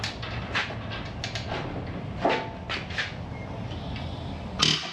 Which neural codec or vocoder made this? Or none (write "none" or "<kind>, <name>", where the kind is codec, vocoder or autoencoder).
none